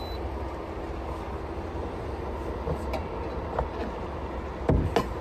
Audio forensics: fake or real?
real